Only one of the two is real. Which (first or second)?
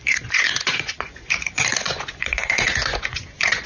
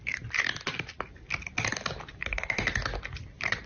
second